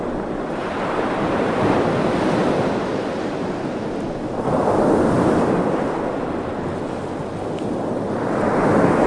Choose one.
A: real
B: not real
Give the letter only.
A